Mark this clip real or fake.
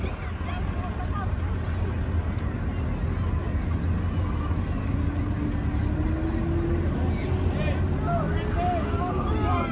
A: real